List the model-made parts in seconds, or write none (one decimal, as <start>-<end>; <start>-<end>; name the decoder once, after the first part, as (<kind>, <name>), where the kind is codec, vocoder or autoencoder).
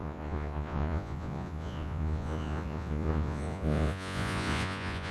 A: 0.0-5.1 (vocoder, Vocos)